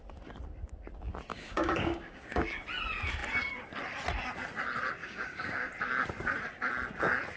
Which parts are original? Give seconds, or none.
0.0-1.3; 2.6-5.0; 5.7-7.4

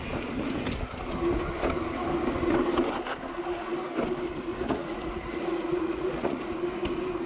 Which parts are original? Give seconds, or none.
0.0-4.5; 6.5-7.3

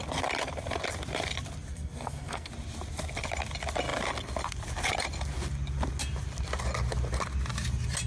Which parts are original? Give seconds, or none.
0.0-1.7; 2.5-8.1

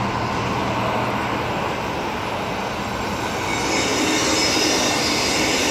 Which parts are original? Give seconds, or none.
0.0-5.7

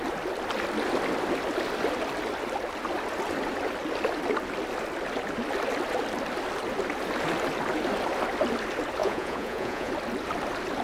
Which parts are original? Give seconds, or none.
0.0-9.0; 9.9-10.8